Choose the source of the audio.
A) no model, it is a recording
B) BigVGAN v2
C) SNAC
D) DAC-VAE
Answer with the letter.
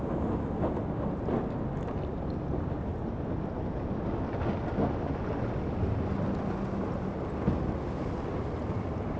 A